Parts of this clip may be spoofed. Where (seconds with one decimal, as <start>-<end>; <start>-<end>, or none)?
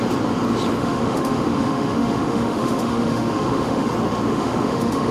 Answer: 0.8-3.9; 4.3-5.1